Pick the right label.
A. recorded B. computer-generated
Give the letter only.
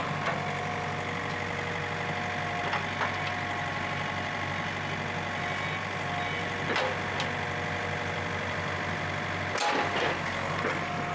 A